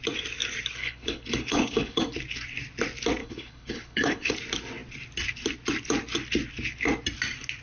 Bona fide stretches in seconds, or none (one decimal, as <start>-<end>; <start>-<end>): 0.0-0.8; 2.0-3.2; 4.3-7.6